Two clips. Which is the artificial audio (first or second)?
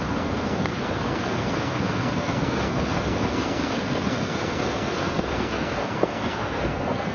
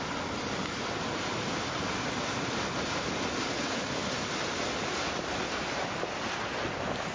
first